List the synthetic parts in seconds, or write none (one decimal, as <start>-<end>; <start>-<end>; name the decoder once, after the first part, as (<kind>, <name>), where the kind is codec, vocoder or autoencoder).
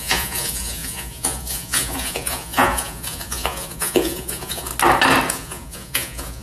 0.0-4.7 (vocoder, Vocos); 5.3-6.4